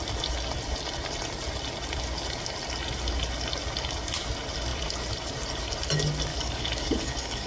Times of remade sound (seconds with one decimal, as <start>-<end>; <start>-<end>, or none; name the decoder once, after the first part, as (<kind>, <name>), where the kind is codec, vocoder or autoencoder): 6.3-7.5 (codec, DAC)